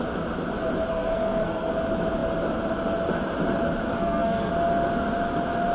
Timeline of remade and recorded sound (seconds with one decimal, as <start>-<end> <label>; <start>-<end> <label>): 0.0-0.9 recorded; 0.9-1.7 remade; 1.7-3.9 recorded; 3.9-4.5 remade; 4.5-5.7 recorded

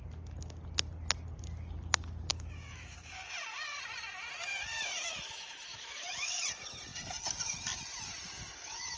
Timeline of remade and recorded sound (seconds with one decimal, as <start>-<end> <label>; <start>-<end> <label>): 0.0-2.3 recorded; 2.3-3.2 remade; 3.2-4.7 recorded; 4.7-6.3 remade; 6.3-9.0 recorded

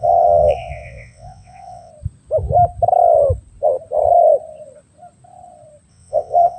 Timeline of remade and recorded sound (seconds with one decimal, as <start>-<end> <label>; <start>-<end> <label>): 0.0-1.9 remade; 1.9-5.9 recorded; 5.9-6.6 remade

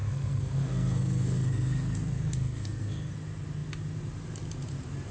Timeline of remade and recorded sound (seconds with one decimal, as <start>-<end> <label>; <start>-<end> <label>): 0.0-3.1 remade; 3.1-5.1 recorded

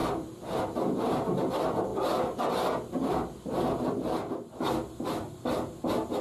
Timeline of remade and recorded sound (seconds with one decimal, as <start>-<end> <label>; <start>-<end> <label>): 0.0-6.2 recorded

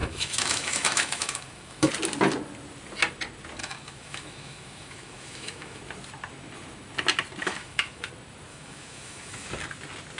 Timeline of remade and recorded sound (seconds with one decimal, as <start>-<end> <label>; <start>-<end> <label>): 0.0-1.9 remade; 1.9-3.6 recorded; 3.6-5.8 remade; 5.8-7.4 recorded; 7.4-8.1 remade; 8.1-8.5 recorded; 8.5-9.5 remade; 9.5-10.2 recorded

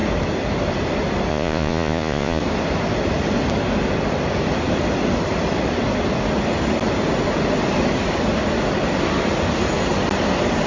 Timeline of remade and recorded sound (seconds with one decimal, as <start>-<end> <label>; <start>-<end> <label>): 0.0-1.3 recorded; 1.3-2.4 remade; 2.4-10.7 recorded

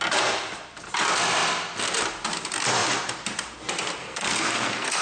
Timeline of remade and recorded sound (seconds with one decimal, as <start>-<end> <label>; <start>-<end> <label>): 0.0-4.0 recorded; 4.0-5.0 remade